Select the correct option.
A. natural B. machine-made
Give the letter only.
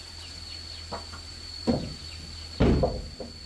A